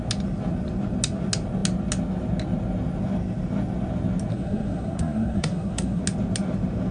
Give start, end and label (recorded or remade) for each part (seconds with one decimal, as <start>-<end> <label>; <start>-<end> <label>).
0.0-4.3 recorded; 4.3-6.0 remade; 6.0-6.9 recorded